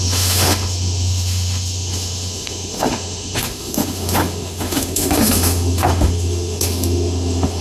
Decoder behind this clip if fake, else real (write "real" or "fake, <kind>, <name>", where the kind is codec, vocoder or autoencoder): fake, autoencoder, DAC-VAE